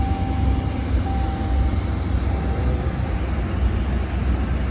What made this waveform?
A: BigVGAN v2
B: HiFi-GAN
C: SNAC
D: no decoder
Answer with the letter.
D